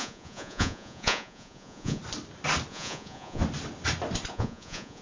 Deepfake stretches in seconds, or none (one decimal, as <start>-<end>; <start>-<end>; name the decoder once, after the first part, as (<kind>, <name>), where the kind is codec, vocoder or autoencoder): 0.0-2.0 (vocoder, Vocos); 2.7-3.4; 4.3-5.0